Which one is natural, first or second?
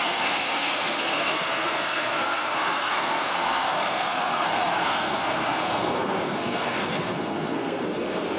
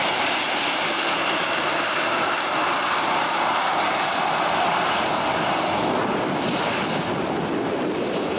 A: second